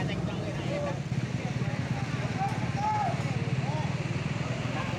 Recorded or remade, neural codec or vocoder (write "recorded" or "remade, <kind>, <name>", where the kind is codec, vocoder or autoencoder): recorded